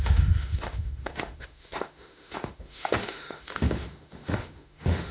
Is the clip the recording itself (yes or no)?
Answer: no